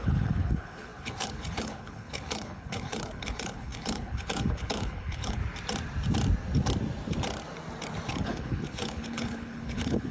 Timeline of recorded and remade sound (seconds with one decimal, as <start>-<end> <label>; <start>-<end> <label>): 0.0-5.4 remade; 5.4-8.1 recorded; 8.1-10.1 remade

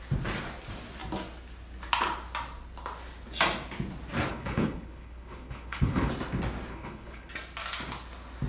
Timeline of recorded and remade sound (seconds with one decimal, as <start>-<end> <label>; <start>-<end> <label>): 0.0-4.3 recorded; 4.3-6.1 remade; 6.1-6.7 recorded; 6.7-7.3 remade; 7.3-8.5 recorded

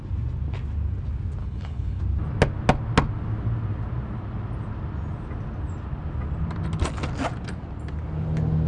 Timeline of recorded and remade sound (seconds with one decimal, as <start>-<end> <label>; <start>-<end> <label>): 0.0-1.4 recorded; 1.4-2.0 remade; 2.0-8.7 recorded

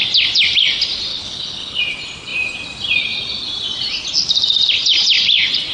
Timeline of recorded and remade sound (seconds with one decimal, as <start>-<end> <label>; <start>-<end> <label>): 0.0-1.1 recorded; 1.1-1.8 remade; 1.8-5.7 recorded

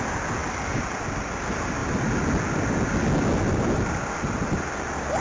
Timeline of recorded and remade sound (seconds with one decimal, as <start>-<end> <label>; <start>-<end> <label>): 0.0-5.2 recorded

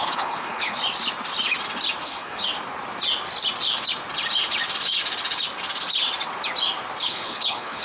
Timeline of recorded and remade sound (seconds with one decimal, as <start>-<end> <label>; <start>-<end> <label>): 0.0-0.8 remade; 0.8-2.0 recorded; 2.0-2.5 remade; 2.5-7.0 recorded; 7.0-7.8 remade

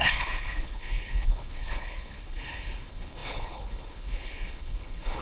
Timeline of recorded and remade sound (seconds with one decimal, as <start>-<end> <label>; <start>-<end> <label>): 0.0-5.2 remade

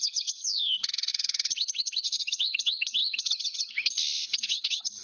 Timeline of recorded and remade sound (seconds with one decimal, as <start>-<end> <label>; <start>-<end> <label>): 0.0-5.0 remade